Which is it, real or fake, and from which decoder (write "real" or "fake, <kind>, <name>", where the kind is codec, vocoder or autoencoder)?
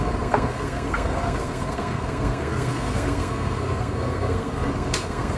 fake, codec, SNAC